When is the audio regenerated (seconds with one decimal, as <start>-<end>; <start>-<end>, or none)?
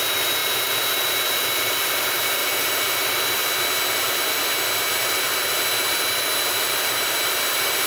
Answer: 0.0-2.4; 6.5-7.9